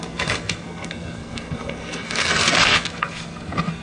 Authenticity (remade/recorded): remade